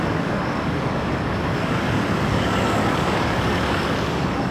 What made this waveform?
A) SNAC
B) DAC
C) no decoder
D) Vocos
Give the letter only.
B